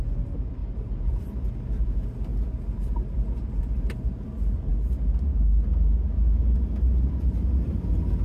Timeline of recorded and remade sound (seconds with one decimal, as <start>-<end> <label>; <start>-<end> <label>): 0.0-0.6 recorded; 0.6-1.5 remade; 1.5-8.2 recorded